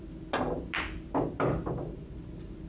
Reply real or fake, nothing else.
real